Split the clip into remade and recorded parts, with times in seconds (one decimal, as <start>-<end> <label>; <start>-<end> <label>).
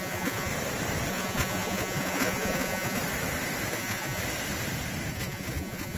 0.0-0.5 remade; 0.5-1.1 recorded; 1.1-3.0 remade; 3.0-3.7 recorded; 3.7-4.2 remade; 4.2-5.1 recorded; 5.1-6.0 remade